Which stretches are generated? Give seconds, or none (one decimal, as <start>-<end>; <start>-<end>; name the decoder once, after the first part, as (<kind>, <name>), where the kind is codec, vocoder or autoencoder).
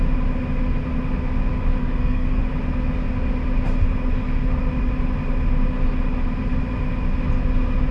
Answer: 1.8-2.4 (codec, SNAC)